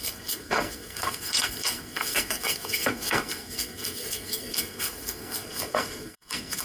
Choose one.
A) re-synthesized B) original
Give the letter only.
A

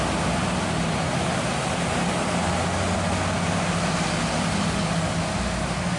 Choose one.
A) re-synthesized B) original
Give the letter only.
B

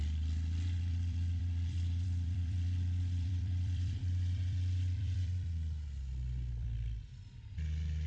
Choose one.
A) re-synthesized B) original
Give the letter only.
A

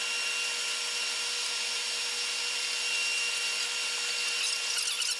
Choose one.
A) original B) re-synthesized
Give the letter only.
A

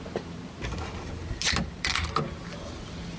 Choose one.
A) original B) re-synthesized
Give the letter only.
A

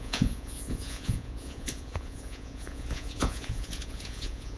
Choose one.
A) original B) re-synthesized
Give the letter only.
B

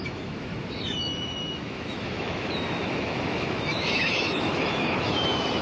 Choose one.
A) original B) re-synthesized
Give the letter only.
B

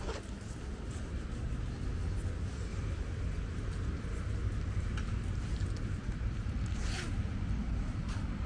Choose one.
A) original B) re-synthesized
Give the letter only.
A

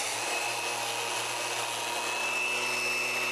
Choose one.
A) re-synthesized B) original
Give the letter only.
B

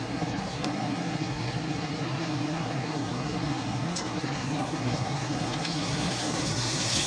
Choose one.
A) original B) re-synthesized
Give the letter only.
B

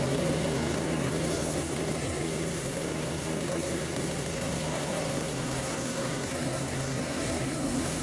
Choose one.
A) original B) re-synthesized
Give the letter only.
B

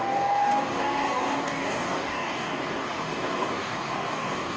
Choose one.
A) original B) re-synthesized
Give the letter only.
B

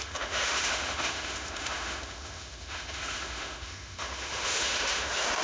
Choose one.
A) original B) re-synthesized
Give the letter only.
B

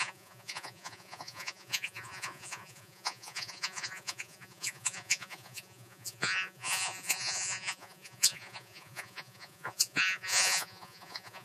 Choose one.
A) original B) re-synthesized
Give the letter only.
B